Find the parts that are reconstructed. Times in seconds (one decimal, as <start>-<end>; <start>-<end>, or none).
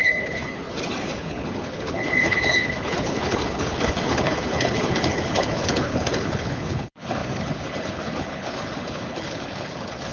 0.0-10.1